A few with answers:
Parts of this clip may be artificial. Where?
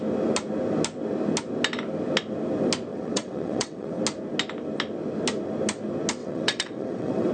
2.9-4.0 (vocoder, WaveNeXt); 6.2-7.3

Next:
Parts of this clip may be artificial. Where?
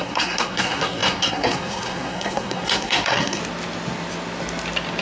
0.0-3.4 (codec, SNAC)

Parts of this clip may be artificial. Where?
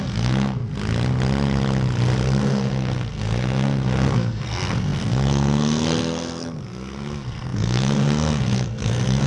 0.0-0.6 (codec, SNAC); 2.4-9.3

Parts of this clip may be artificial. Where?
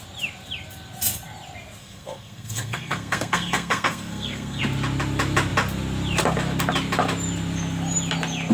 1.8-4.6 (codec, SNAC)